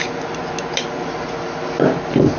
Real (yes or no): yes